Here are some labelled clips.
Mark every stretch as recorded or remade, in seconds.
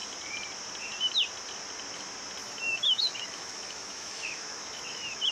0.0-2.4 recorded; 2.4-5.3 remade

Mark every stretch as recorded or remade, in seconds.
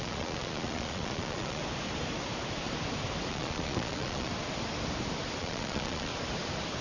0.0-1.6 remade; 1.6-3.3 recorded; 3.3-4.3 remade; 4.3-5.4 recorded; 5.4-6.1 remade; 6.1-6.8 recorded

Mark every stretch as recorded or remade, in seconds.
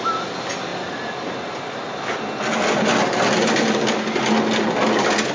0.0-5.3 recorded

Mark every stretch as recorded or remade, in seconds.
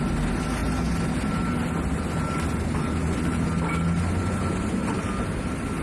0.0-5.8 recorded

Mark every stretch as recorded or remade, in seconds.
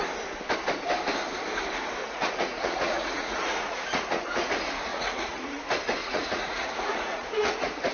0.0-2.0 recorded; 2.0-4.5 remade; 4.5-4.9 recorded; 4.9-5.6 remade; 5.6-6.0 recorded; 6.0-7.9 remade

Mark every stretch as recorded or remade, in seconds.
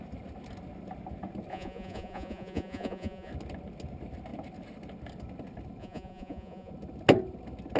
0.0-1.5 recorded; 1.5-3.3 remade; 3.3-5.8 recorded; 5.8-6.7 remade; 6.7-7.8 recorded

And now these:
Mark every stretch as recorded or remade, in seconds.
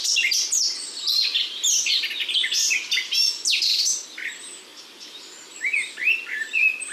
0.0-1.3 recorded; 1.3-1.9 remade; 1.9-6.9 recorded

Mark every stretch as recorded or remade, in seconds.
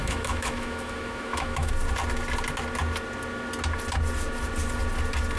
0.0-1.7 remade; 1.7-5.4 recorded